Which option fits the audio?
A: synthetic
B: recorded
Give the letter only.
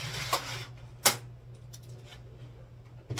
B